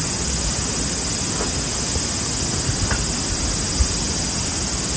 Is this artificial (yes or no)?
no